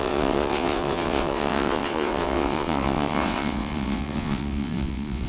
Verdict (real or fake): fake